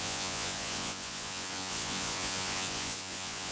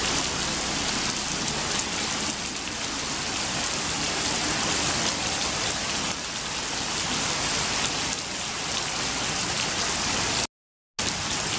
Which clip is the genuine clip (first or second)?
second